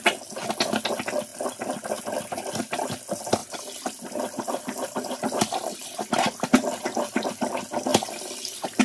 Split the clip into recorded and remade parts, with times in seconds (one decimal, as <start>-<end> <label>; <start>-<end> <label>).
0.0-3.4 recorded; 3.4-7.3 remade; 7.3-7.9 recorded; 7.9-8.8 remade